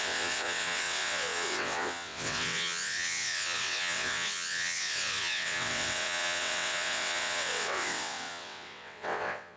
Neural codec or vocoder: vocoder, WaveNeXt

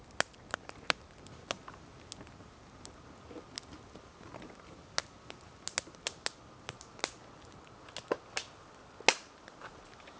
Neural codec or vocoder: none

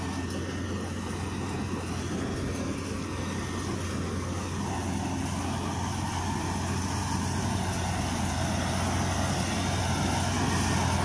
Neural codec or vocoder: none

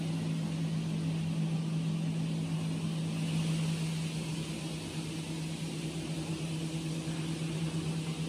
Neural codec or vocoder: none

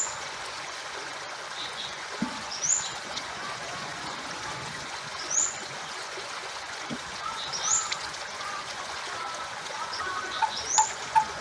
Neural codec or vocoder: vocoder, Vocos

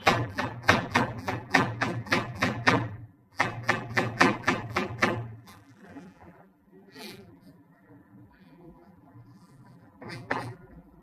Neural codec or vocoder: vocoder, BigVGAN v2